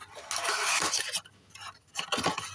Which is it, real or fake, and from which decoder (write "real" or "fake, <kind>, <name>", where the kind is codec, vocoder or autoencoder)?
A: real